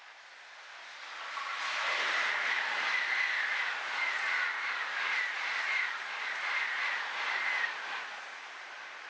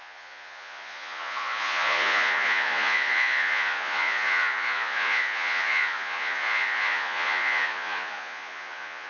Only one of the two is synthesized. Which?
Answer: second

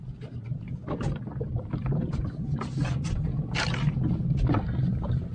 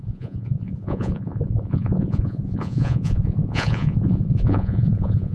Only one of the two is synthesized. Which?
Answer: second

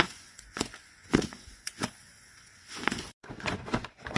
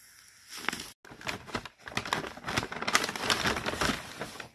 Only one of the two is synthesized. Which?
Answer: first